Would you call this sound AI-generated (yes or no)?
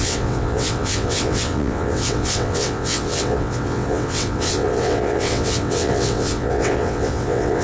yes